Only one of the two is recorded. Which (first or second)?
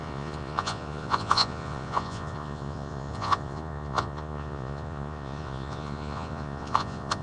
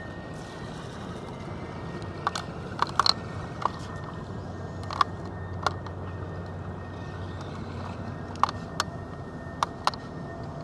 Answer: second